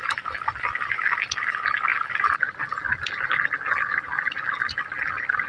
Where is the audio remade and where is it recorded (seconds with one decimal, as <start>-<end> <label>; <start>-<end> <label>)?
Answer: 0.0-5.5 recorded